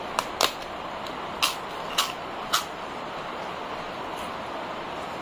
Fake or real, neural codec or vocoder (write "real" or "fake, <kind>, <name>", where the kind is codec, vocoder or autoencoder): real